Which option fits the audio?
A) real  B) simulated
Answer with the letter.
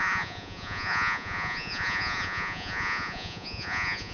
B